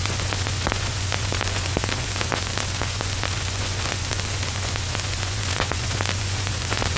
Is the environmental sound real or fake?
fake